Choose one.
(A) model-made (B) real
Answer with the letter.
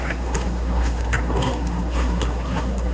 A